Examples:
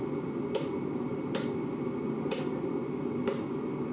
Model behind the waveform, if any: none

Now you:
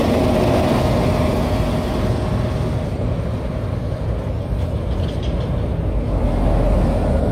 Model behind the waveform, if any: none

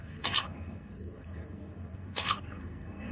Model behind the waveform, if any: codec, SNAC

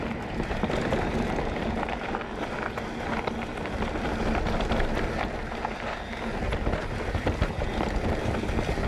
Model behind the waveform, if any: vocoder, BigVGAN v2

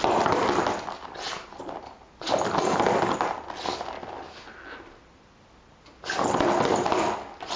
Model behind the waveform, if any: none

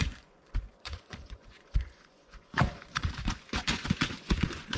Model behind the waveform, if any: vocoder, Vocos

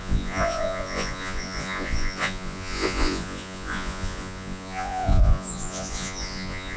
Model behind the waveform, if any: vocoder, Vocos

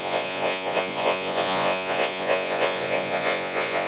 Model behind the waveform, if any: vocoder, Vocos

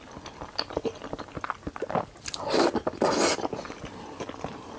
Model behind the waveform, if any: none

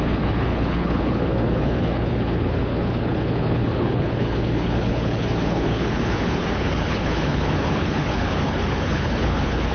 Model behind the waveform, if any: codec, HILCodec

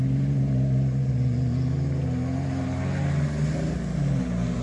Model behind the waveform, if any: none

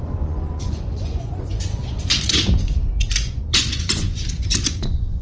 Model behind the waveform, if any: vocoder, Vocos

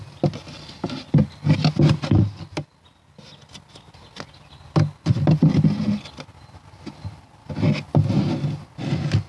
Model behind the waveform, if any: none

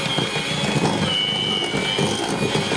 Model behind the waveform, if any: none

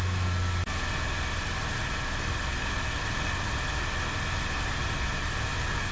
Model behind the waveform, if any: none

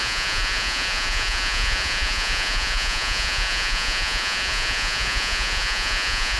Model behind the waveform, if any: vocoder, Vocos